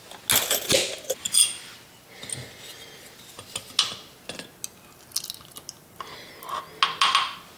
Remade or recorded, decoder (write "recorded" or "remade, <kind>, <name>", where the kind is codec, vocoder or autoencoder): recorded